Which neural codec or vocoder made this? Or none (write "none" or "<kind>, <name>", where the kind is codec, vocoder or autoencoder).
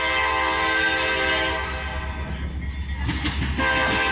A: none